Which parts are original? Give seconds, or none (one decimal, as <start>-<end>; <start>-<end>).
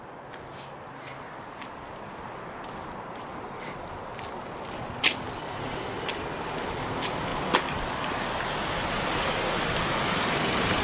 0.0-10.8